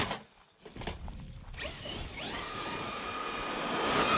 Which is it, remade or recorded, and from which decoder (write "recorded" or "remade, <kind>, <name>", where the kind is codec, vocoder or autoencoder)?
recorded